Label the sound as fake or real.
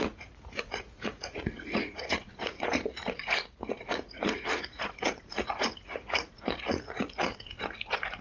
fake